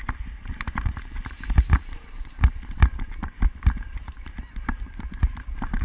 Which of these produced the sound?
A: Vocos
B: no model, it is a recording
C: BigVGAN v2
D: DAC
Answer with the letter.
C